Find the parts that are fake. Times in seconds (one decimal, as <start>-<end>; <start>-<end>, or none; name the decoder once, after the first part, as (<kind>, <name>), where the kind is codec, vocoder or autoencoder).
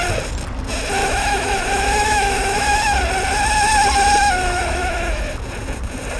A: 1.0-3.0 (autoencoder, DAC-VAE); 4.2-5.2